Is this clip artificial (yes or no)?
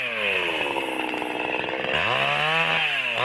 no